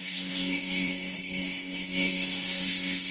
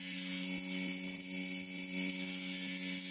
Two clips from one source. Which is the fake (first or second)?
first